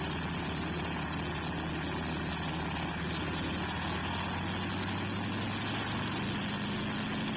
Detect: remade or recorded recorded